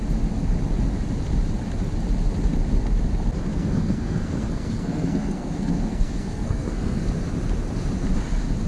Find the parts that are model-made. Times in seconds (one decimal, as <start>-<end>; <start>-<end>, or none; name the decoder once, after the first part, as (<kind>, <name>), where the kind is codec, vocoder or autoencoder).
3.5-7.1 (codec, SNAC)